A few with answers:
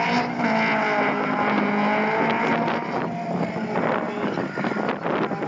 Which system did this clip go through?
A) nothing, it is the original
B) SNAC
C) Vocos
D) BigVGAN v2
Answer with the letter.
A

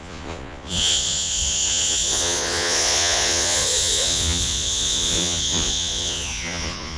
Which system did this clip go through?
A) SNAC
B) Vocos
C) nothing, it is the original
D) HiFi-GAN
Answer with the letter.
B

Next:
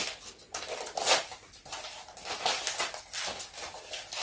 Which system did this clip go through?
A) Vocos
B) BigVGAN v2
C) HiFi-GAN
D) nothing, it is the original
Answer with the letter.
D